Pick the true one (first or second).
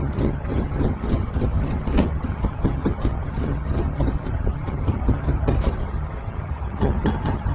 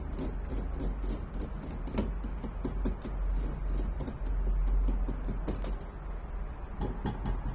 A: second